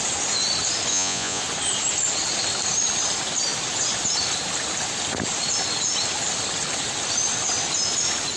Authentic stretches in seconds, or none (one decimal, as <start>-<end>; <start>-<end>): 0.0-0.9; 1.4-8.4